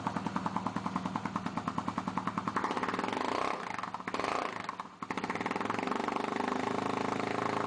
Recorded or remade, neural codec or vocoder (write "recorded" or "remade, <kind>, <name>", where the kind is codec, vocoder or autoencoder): recorded